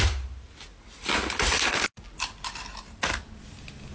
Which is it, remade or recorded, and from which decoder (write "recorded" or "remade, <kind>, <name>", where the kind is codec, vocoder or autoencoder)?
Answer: recorded